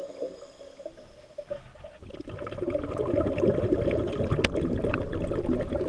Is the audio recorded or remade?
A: recorded